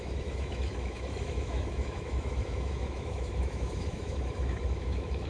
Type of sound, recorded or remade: remade